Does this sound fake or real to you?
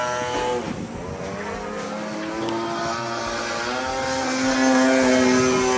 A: real